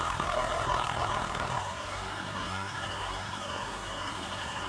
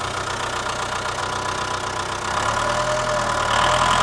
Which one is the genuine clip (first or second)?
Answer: second